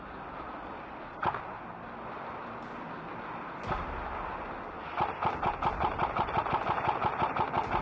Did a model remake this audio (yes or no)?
no